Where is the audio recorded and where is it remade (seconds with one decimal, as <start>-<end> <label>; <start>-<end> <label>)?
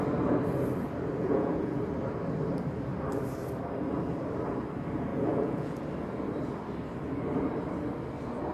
0.0-1.2 recorded; 1.2-1.8 remade; 1.8-5.1 recorded; 5.1-5.8 remade; 5.8-8.5 recorded